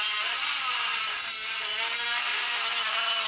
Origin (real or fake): real